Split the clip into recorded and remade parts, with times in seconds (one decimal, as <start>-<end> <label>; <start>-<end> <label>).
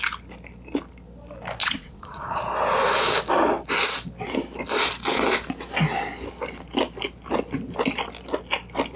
0.0-1.6 recorded; 1.6-2.4 remade; 2.4-9.0 recorded